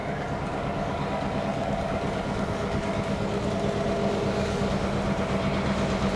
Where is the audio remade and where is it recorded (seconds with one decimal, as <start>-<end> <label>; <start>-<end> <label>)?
0.0-3.5 remade; 3.5-4.0 recorded; 4.0-4.7 remade; 4.7-6.2 recorded